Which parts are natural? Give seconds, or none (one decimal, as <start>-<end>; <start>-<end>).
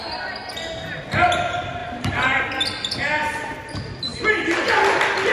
0.0-1.8; 2.4-4.1; 4.7-5.3